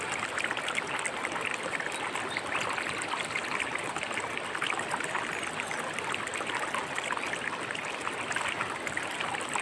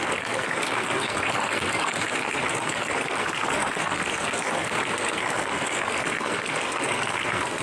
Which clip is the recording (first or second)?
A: first